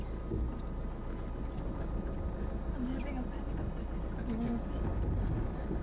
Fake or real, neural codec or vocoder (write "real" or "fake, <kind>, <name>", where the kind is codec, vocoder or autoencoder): real